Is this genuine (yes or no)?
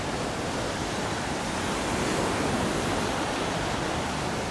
no